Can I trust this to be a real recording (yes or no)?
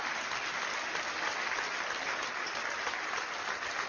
yes